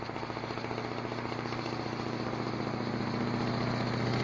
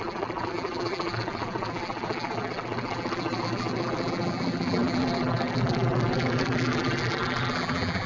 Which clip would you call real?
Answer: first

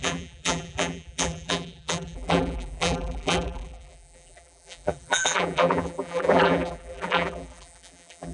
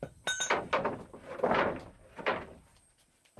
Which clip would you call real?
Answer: second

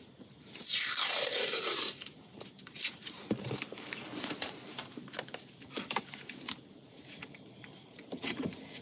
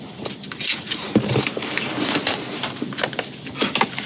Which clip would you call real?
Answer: second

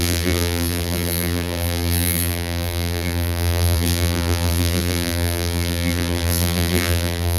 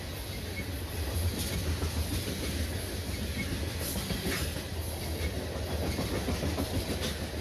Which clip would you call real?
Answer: second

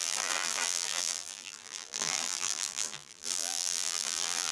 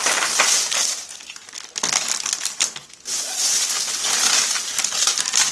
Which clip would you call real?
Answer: second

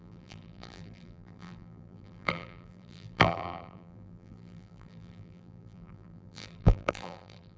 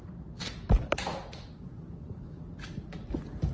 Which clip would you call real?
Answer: second